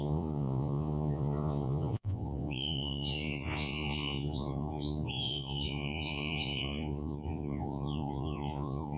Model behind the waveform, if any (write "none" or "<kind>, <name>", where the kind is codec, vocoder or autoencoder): vocoder, Vocos